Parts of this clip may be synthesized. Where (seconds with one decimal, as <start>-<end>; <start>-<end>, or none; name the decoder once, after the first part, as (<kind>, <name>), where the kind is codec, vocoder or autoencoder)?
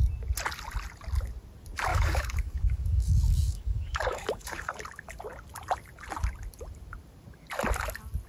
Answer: 1.9-4.7 (codec, DAC)